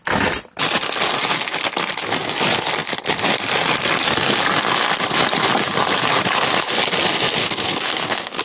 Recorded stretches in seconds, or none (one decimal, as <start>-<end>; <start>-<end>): 0.0-7.4